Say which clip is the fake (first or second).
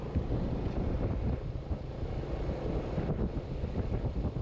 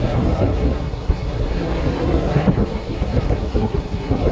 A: second